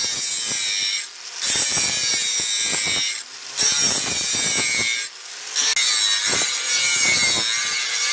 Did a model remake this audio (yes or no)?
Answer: no